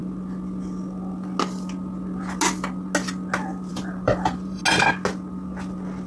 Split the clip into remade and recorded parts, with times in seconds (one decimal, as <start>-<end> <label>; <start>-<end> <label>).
0.0-3.7 recorded; 3.7-4.6 remade; 4.6-6.1 recorded

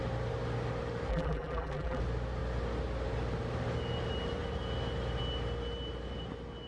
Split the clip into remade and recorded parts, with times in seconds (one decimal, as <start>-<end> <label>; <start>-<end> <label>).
0.0-1.1 recorded; 1.1-2.0 remade; 2.0-6.7 recorded

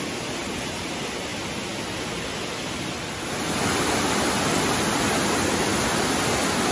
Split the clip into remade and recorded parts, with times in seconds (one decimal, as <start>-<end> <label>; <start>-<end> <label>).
0.0-0.4 recorded; 0.4-0.9 remade; 0.9-6.7 recorded

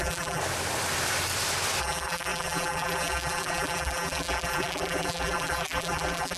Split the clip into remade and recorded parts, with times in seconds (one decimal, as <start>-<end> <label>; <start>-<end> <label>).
0.0-0.4 remade; 0.4-1.8 recorded; 1.8-6.4 remade

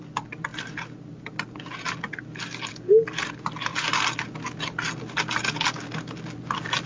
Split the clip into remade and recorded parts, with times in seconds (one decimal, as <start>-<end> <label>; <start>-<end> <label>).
0.0-6.9 recorded

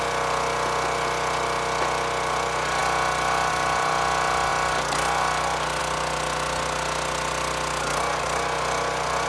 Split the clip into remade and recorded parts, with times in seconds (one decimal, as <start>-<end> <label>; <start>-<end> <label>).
0.0-9.3 recorded

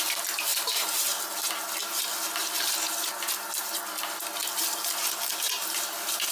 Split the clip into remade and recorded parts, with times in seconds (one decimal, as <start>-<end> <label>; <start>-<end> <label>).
0.0-6.3 recorded

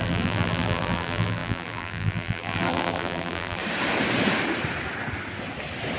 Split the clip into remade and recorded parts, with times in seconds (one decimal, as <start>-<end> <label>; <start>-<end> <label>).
0.0-3.6 remade; 3.6-6.0 recorded